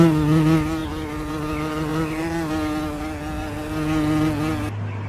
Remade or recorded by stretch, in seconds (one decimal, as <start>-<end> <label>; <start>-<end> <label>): 0.0-5.1 recorded